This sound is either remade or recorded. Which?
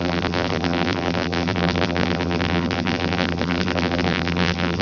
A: remade